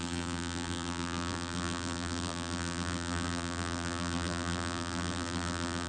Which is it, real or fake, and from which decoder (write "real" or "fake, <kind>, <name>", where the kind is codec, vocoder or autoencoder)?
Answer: fake, vocoder, BigVGAN v2